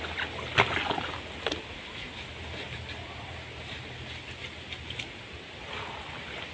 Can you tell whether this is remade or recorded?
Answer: recorded